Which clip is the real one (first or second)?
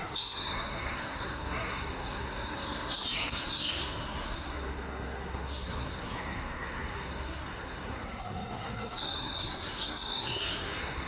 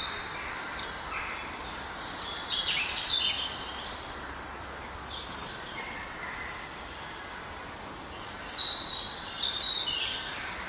second